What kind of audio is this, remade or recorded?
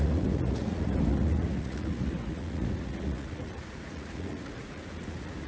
remade